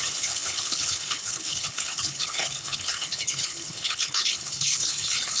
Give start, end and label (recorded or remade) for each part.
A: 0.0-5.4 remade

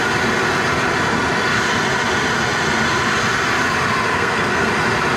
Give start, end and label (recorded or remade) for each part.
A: 0.0-4.1 recorded; 4.1-4.7 remade; 4.7-5.2 recorded